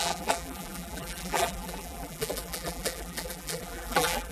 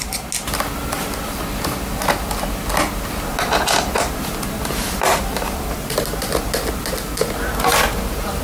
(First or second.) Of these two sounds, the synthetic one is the first